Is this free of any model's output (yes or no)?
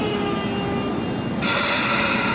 yes